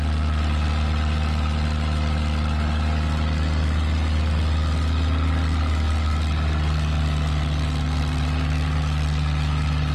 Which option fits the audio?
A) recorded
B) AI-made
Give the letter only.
A